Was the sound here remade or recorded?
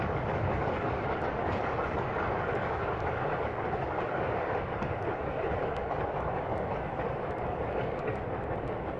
remade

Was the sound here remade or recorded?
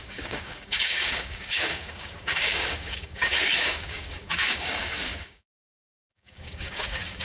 remade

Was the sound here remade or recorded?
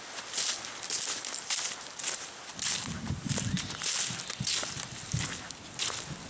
recorded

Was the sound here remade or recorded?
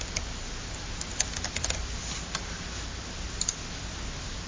recorded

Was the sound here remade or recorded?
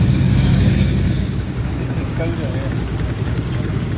remade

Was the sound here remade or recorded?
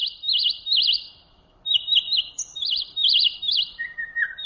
recorded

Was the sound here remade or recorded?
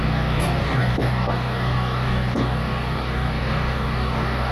remade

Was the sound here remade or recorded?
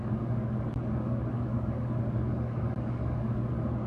remade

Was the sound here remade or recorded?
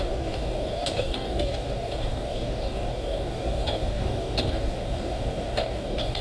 remade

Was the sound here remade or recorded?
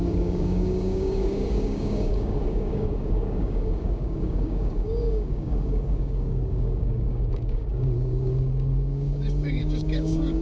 remade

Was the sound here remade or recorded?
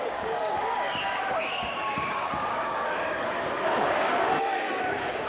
remade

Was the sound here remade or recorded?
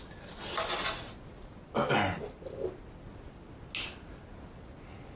recorded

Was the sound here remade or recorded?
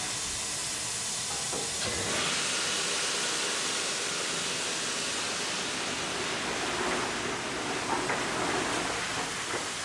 recorded